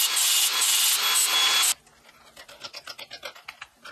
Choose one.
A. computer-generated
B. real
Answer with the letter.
B